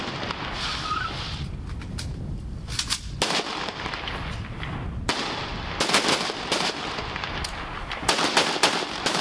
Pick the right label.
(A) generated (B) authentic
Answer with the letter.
B